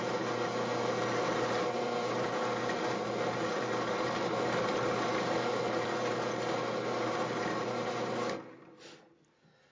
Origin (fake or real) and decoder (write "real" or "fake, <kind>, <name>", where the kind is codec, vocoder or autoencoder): real